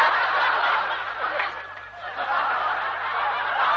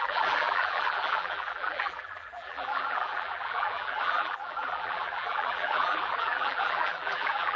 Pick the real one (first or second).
first